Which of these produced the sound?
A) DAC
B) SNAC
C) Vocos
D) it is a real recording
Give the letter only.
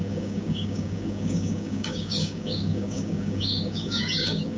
A